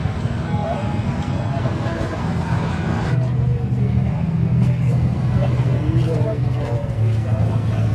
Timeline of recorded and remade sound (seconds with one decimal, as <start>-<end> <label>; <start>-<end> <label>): 0.0-7.9 remade